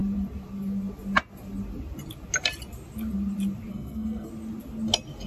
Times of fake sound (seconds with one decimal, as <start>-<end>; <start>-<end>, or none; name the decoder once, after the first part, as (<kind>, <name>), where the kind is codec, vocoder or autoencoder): 3.7-4.3 (codec, SNAC)